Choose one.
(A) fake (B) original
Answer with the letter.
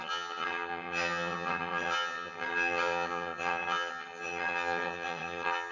A